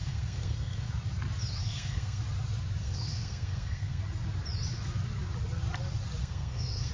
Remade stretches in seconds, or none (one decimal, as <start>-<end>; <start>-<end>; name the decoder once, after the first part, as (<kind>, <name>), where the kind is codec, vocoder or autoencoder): 0.0-0.9 (codec, SNAC); 1.6-2.2; 2.8-4.0; 6.2-6.9